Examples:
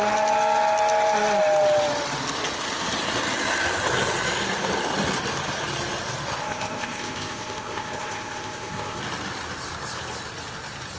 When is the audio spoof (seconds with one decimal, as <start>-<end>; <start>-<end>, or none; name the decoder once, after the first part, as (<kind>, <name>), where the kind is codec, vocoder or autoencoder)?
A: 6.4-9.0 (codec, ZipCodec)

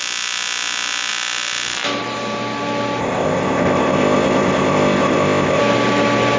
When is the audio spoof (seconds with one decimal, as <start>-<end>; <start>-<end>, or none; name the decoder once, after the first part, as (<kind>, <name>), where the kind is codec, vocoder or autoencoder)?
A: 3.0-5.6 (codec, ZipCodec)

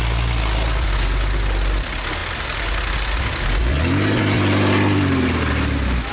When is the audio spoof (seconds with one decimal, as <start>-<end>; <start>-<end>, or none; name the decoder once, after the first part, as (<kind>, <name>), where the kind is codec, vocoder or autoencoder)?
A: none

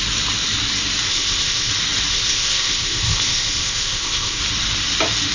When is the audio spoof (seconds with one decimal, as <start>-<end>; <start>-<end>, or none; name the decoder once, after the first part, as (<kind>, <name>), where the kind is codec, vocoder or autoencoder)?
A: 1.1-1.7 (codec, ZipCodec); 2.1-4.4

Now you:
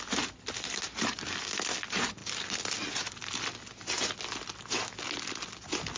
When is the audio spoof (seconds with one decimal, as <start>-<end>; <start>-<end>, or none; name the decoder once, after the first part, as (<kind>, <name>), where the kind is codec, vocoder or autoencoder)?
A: none